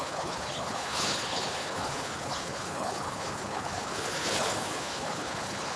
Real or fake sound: fake